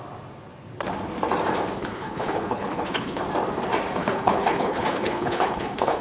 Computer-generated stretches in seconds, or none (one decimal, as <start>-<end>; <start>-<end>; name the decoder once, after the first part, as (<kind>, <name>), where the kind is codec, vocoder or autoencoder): 1.8-3.2 (codec, HILCodec); 4.0-6.0

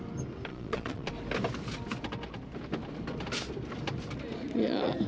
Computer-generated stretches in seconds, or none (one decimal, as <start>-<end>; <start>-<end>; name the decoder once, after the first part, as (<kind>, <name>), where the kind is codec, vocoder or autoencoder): 0.5-1.1 (vocoder, Vocos)

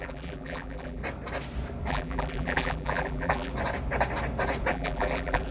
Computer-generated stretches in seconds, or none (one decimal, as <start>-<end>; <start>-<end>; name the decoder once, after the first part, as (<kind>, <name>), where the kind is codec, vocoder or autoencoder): 0.0-1.0 (vocoder, BigVGAN v2); 1.9-3.5; 4.7-5.5

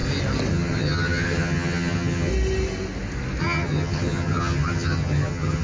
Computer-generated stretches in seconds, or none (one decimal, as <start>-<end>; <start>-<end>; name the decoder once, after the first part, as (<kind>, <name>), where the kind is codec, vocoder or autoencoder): 0.5-2.3 (vocoder, HiFi-GAN); 3.4-5.6

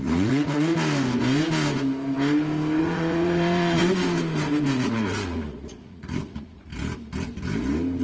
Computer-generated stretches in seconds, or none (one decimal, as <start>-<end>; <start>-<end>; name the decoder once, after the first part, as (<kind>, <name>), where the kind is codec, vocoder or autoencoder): 0.0-0.7 (vocoder, Vocos); 2.8-3.8; 4.7-6.7